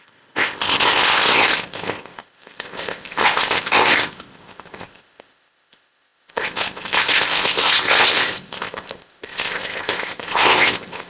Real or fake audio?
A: fake